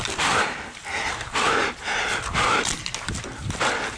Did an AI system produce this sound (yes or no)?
no